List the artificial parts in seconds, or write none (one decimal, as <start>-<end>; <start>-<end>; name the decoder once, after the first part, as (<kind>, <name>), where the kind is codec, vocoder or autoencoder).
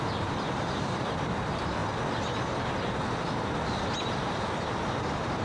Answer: 0.0-1.8 (vocoder, BigVGAN v2); 4.9-5.4